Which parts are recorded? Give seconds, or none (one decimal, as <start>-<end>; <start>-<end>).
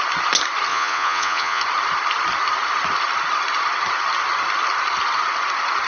0.0-0.7; 1.6-5.9